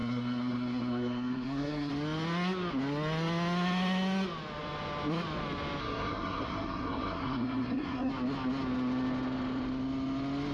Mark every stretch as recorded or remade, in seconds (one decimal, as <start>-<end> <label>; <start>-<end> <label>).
0.0-1.9 remade; 1.9-5.8 recorded; 5.8-8.1 remade; 8.1-10.5 recorded